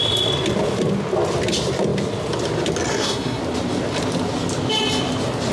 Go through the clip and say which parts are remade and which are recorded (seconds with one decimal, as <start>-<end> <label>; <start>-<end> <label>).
0.0-2.9 recorded; 2.9-3.4 remade; 3.4-5.5 recorded